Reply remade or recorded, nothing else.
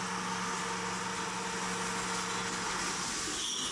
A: recorded